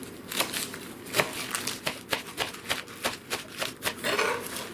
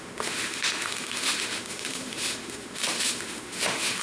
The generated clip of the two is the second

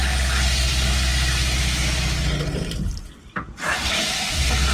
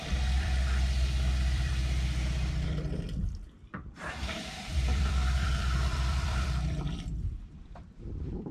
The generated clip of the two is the second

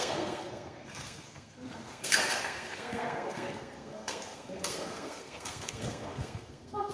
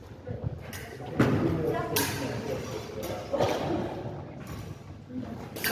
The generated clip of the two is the first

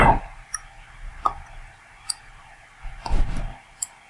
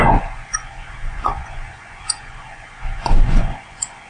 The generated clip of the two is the second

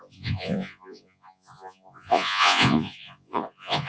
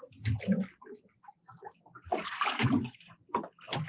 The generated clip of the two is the first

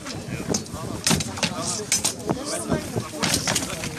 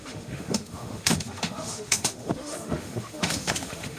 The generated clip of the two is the second